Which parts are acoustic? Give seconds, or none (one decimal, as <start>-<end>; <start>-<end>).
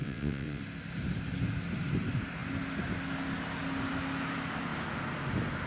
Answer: 0.6-5.7